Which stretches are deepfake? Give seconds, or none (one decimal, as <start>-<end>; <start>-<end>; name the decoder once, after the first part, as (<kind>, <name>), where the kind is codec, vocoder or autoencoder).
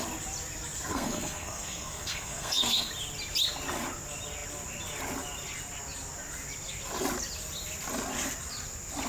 0.9-2.9 (codec, SNAC)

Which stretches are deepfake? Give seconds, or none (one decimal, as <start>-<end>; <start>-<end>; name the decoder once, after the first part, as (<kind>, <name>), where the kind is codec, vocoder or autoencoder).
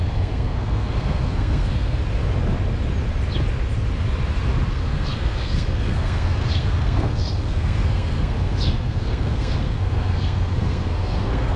0.0-2.0 (codec, SNAC); 4.7-11.6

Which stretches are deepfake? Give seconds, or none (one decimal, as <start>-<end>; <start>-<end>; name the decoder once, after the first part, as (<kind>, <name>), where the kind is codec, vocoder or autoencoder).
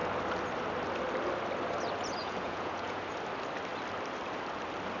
2.2-3.0 (vocoder, Vocos)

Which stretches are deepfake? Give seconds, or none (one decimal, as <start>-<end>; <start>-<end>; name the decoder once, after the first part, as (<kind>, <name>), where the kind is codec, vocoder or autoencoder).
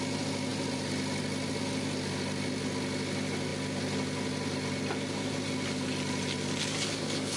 6.6-7.4 (codec, DAC)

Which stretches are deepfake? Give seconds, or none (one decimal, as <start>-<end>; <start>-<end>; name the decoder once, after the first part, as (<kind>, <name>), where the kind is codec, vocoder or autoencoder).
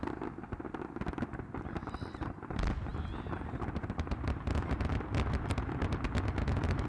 none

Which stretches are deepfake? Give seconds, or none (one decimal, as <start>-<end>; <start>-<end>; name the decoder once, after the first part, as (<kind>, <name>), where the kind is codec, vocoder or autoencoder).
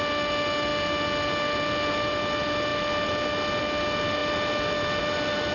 none